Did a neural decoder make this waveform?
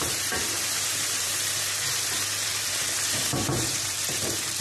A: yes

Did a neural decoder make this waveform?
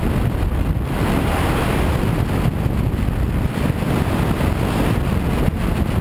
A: no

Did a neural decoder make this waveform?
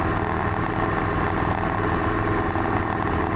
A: no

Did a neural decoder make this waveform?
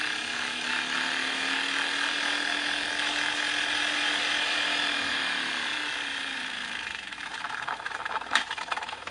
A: yes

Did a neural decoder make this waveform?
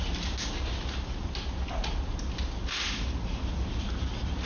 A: no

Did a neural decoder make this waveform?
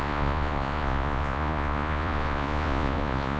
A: yes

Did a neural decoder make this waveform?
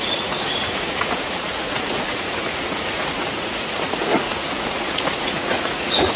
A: yes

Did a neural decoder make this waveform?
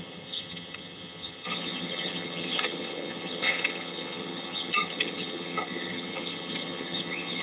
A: yes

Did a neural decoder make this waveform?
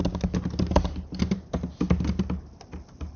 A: no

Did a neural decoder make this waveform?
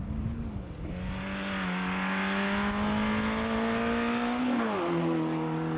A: no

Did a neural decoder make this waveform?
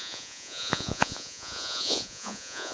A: yes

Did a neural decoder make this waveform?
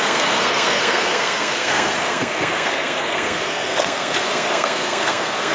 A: yes